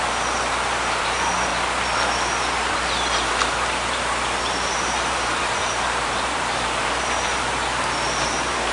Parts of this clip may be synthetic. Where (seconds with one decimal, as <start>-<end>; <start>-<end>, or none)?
0.0-1.5; 2.7-8.7